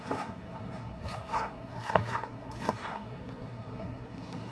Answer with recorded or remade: remade